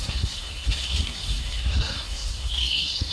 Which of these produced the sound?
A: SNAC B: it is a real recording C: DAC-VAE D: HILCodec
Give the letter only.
A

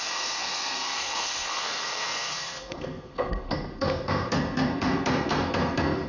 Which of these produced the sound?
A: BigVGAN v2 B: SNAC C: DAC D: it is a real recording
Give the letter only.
B